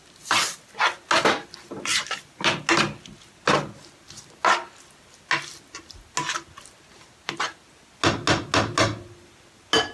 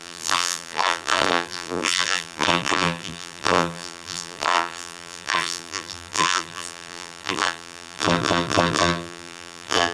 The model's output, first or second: second